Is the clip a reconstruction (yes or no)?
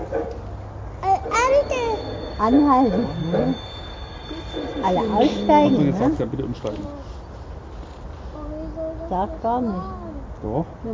no